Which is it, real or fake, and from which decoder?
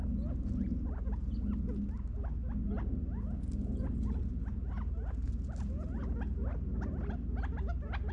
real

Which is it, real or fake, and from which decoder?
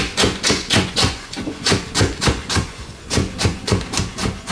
fake, vocoder, Vocos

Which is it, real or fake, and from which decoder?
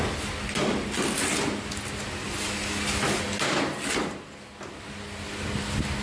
real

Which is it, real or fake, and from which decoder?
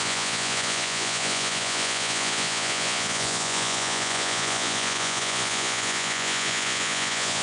fake, vocoder, Vocos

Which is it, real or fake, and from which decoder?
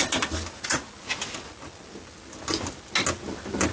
real